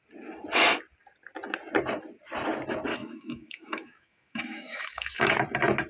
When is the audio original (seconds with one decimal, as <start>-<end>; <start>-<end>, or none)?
0.0-2.9; 5.3-5.9